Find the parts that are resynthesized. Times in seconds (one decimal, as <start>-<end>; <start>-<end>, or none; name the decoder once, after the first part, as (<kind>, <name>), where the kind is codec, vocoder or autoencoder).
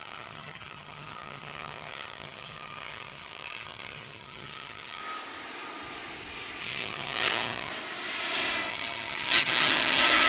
0.0-5.0 (vocoder, HiFi-GAN); 6.6-7.7; 8.7-10.3